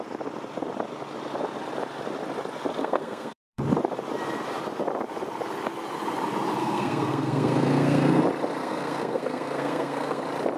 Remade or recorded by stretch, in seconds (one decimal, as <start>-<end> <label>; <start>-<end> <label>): 0.0-2.8 recorded; 2.8-3.6 remade; 3.6-6.6 recorded; 6.6-8.2 remade; 8.2-8.6 recorded; 8.6-10.2 remade; 10.2-10.6 recorded

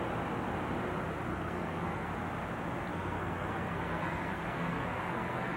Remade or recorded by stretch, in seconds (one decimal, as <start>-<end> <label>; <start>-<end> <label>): 0.0-1.3 recorded; 1.3-2.1 remade; 2.1-2.9 recorded; 2.9-5.6 remade